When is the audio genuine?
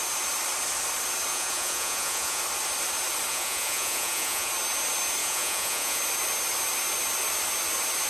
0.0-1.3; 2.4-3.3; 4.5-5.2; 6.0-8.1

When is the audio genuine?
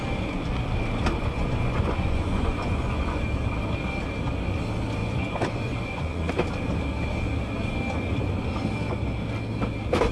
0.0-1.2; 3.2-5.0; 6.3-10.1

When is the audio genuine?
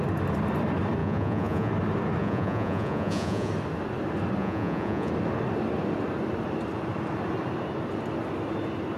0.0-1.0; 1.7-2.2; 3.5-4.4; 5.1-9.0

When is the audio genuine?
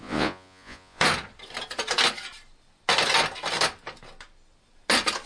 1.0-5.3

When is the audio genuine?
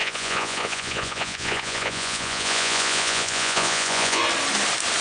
4.2-5.0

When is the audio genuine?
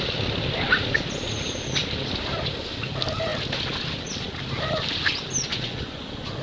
0.0-5.5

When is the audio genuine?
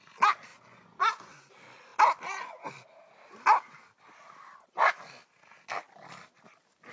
0.0-0.5; 1.5-6.9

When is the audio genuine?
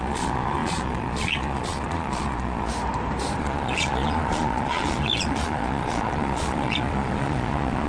2.7-3.4